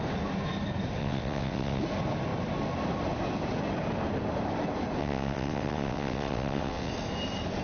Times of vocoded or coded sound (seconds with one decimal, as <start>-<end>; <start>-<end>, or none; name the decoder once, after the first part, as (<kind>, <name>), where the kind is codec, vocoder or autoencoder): 1.0-1.8 (vocoder, WaveNeXt); 5.0-6.9